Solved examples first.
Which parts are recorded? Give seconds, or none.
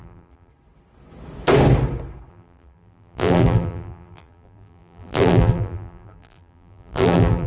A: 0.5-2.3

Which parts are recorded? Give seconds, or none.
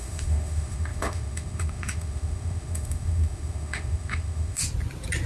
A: 4.6-5.3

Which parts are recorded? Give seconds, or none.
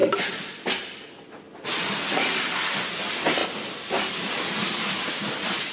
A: 0.0-5.7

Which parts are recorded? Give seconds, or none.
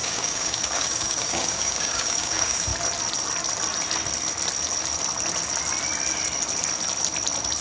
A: 2.7-7.6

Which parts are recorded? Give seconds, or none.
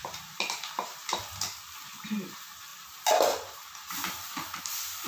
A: none